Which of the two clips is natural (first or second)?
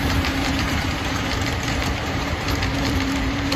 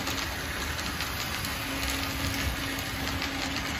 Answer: second